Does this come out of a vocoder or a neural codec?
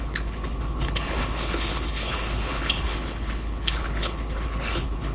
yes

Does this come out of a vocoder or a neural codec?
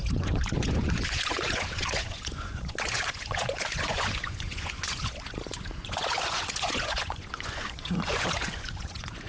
yes